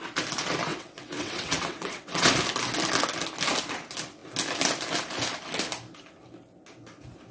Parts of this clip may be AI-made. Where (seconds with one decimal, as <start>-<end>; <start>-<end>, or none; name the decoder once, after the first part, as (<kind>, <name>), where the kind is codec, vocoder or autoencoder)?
0.7-2.3 (vocoder, WaveNeXt)